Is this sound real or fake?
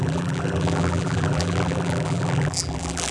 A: fake